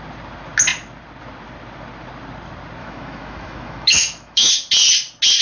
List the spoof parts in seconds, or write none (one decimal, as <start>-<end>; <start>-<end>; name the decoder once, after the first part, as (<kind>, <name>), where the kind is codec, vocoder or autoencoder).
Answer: 2.8-4.5 (autoencoder, DAC-VAE)